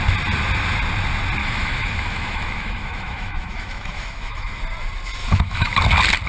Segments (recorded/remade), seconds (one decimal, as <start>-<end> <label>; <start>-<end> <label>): 0.0-1.4 recorded; 1.4-4.6 remade; 4.6-5.2 recorded; 5.2-5.7 remade; 5.7-6.3 recorded